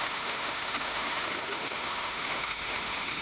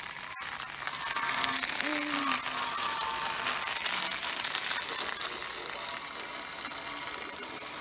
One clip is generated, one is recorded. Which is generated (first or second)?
first